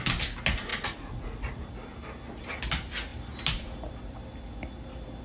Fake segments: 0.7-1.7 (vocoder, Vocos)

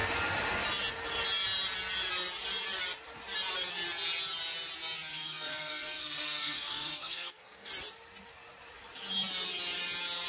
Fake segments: 5.1-7.7 (codec, SNAC)